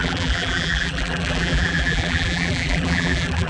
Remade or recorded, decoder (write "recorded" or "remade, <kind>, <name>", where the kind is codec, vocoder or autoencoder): remade, vocoder, BigVGAN v2